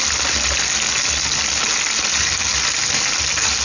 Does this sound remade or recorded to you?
recorded